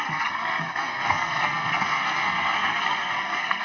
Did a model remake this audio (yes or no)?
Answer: yes